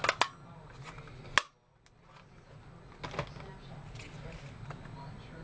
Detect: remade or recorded recorded